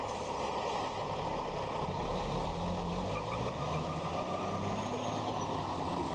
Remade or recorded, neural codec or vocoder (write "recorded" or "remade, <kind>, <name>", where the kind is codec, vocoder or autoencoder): recorded